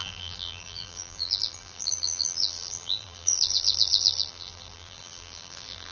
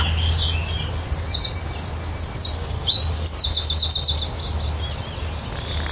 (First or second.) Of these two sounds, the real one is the second